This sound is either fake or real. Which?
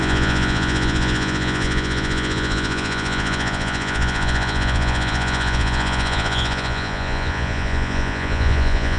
fake